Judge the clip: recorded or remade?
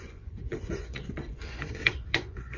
remade